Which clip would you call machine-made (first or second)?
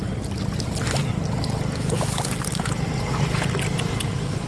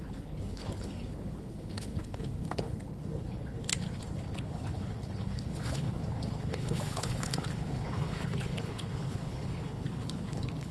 second